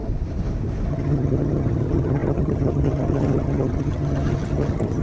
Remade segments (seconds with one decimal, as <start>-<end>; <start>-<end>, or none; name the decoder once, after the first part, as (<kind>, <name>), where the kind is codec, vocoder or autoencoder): 0.9-5.0 (vocoder, HiFi-GAN)